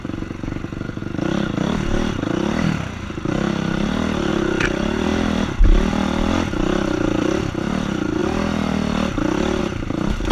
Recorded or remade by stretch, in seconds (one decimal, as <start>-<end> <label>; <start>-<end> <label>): 0.0-10.3 remade